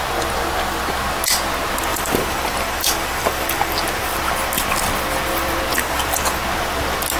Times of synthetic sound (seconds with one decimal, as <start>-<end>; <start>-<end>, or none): 1.9-3.8; 5.7-6.4